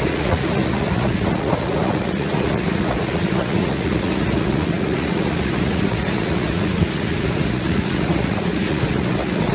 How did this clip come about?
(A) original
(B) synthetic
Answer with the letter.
B